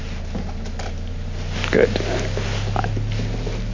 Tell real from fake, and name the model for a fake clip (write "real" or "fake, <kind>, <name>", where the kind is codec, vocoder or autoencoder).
real